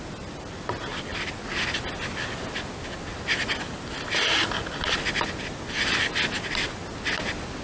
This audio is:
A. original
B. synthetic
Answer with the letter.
A